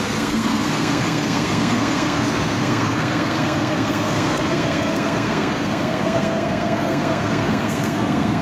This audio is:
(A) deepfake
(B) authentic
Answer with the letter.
A